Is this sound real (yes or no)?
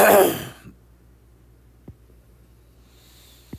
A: yes